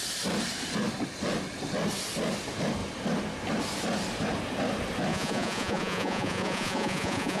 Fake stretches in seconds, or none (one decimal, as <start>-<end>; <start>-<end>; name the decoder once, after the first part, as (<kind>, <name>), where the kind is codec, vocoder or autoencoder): 5.1-7.4 (vocoder, Vocos)